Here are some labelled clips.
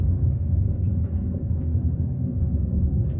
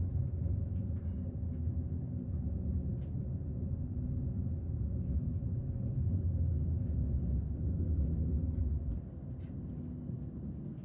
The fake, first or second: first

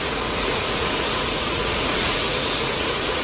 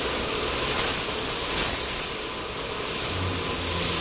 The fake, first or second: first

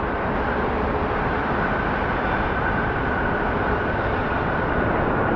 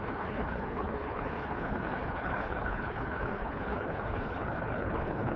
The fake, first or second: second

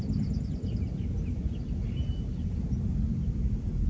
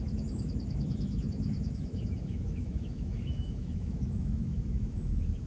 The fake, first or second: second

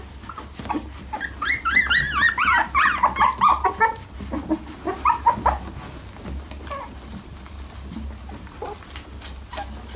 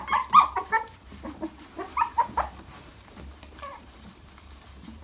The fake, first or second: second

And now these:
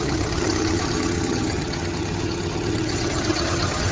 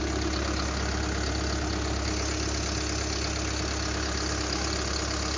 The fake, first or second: first